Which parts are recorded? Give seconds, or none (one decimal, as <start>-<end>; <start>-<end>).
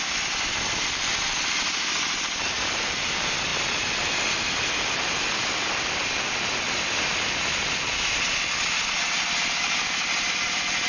0.0-10.9